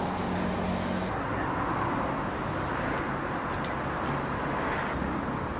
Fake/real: real